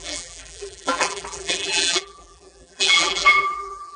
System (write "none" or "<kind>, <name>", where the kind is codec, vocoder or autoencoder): vocoder, BigVGAN v2